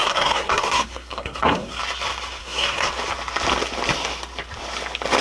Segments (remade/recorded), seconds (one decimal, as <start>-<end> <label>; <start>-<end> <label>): 0.0-1.8 remade; 1.8-2.4 recorded; 2.4-2.9 remade; 2.9-5.2 recorded